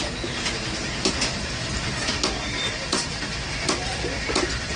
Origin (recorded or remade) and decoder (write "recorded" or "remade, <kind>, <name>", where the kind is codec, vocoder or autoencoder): recorded